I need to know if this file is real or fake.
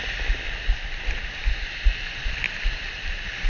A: real